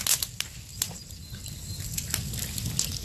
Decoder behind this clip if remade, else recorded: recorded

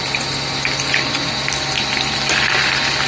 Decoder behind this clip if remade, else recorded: recorded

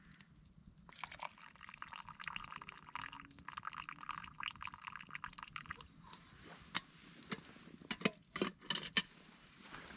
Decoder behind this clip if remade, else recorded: recorded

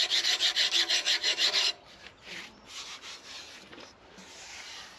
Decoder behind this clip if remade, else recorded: remade, vocoder, BigVGAN v2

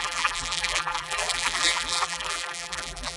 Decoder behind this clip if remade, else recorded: remade, vocoder, BigVGAN v2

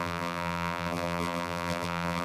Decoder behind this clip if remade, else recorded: remade, vocoder, BigVGAN v2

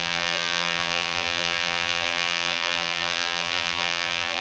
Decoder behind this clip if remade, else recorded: remade, vocoder, BigVGAN v2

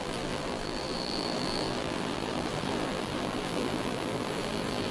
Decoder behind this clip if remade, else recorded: remade, vocoder, BigVGAN v2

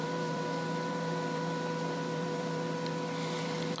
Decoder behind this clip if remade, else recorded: remade, vocoder, BigVGAN v2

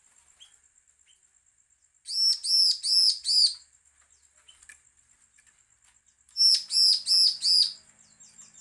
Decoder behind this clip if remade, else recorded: recorded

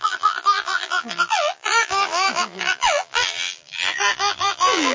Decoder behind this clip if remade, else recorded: remade, vocoder, BigVGAN v2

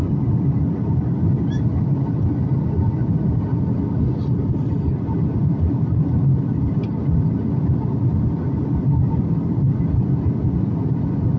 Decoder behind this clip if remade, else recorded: recorded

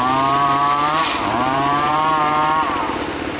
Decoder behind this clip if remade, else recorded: remade, vocoder, BigVGAN v2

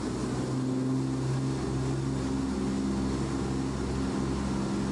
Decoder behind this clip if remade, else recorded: recorded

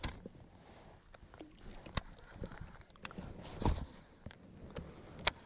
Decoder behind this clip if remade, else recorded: recorded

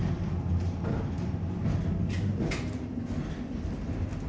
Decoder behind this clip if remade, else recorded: recorded